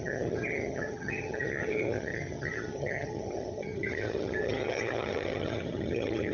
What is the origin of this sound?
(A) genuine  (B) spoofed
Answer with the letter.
B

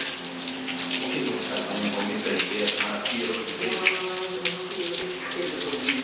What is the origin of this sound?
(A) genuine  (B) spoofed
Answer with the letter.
A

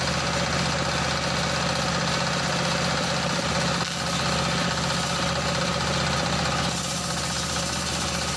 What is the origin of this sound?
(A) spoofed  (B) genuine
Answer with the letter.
B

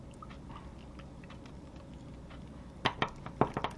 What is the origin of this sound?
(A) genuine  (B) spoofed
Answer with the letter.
A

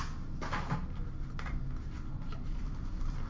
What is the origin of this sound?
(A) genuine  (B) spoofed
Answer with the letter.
A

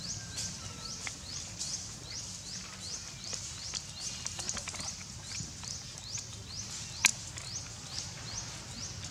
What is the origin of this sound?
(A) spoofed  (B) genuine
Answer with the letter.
B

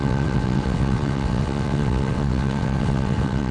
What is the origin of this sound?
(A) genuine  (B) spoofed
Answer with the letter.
B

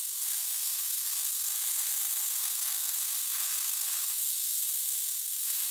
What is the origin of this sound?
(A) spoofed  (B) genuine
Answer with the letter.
A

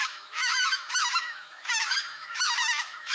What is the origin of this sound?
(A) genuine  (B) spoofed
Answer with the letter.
B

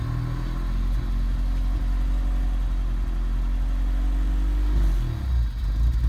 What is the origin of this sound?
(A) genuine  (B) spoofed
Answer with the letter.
A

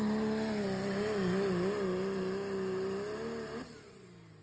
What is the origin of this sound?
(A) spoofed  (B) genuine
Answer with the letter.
B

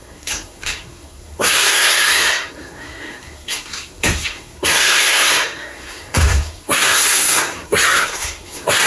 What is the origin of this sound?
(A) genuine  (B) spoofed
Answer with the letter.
B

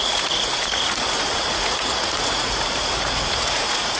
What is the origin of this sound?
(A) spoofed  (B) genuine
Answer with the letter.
A